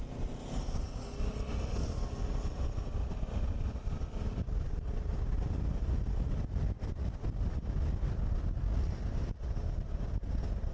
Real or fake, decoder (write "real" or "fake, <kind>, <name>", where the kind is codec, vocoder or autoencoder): real